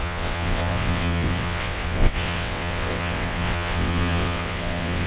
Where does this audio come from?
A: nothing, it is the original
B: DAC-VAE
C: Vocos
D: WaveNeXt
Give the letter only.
D